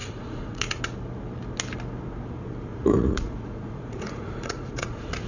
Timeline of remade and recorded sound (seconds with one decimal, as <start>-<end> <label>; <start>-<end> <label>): 0.0-0.8 remade; 0.8-2.7 recorded; 2.7-5.3 remade